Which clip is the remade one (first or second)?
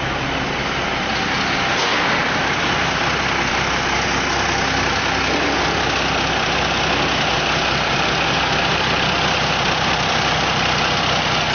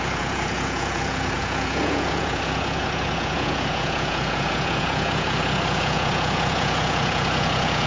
second